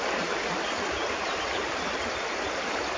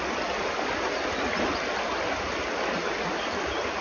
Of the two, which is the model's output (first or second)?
first